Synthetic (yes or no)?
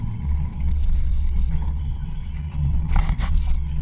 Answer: yes